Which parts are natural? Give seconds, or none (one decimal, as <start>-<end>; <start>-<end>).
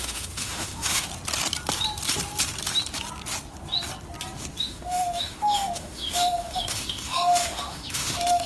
1.1-4.6